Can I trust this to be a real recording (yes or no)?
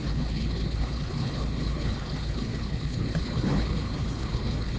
no